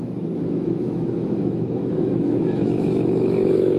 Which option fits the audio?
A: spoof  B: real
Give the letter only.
A